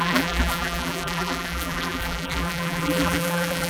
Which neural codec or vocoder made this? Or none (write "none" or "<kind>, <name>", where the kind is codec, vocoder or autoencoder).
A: vocoder, BigVGAN v2